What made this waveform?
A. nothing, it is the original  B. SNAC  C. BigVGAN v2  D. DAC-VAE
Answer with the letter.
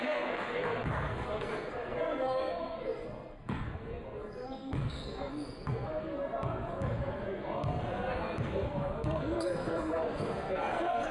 B